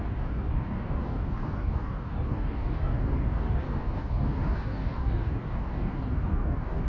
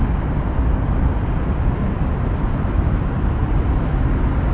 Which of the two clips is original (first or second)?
second